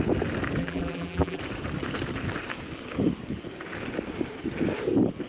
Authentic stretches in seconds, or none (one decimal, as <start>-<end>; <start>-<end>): 0.0-0.6; 1.4-5.3